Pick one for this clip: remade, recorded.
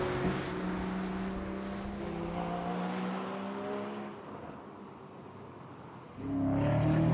recorded